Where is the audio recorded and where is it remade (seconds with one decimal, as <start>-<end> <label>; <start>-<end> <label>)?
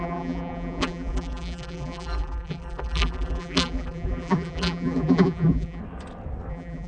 0.0-5.8 remade; 5.8-6.5 recorded; 6.5-6.9 remade